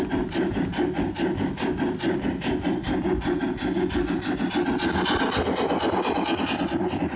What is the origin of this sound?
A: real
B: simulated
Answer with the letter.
A